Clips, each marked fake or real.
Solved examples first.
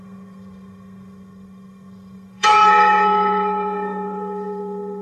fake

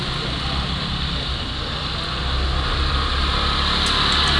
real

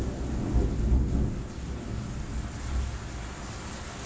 real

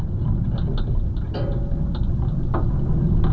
real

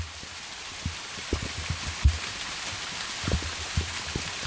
real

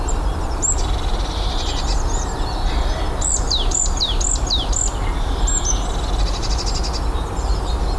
real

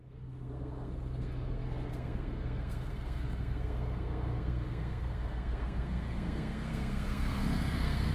fake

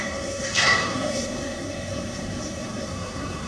fake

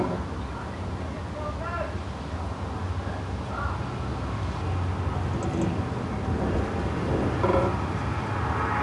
real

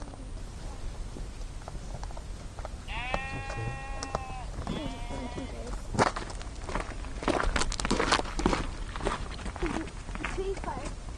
real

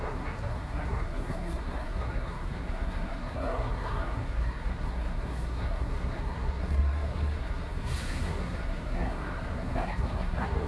fake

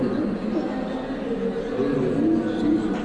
real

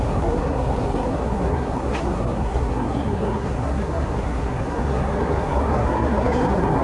fake